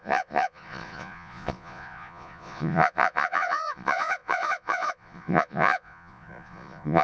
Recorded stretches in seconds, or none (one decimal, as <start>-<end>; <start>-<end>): none